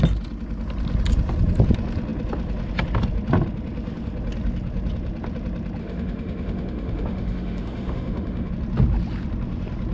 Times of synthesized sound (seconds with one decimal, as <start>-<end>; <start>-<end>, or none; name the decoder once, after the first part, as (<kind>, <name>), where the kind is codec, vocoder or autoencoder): 5.8-8.5 (autoencoder, DAC-VAE)

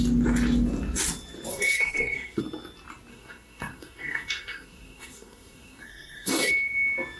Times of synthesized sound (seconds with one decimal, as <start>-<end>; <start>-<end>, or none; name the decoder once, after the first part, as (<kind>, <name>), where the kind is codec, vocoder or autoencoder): 1.5-2.4 (codec, SNAC); 3.1-6.5

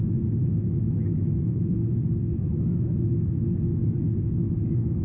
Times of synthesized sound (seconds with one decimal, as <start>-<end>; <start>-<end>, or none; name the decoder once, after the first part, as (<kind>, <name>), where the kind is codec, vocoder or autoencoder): 0.0-5.0 (autoencoder, DAC-VAE)

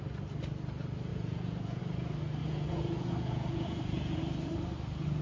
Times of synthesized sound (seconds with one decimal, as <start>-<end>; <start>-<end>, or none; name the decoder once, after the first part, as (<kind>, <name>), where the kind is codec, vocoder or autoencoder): 1.1-1.8 (vocoder, Vocos); 2.4-4.2